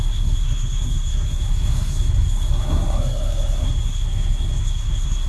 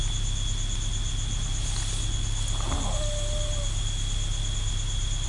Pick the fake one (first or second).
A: first